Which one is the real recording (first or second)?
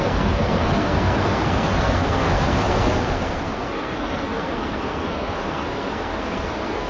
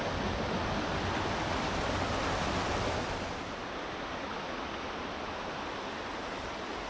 second